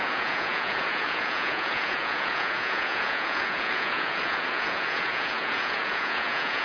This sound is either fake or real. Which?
fake